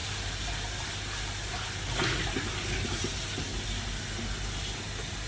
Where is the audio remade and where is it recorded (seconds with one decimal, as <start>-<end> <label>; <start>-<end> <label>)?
0.0-5.3 recorded